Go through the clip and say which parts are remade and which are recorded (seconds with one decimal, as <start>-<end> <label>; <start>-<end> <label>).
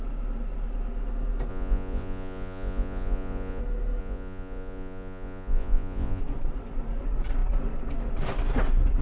0.0-1.5 recorded; 1.5-3.6 remade; 3.6-4.0 recorded; 4.0-6.2 remade; 6.2-9.0 recorded